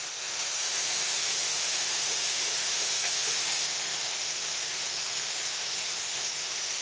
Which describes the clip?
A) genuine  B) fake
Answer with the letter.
B